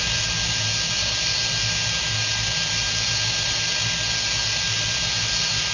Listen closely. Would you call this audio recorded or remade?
recorded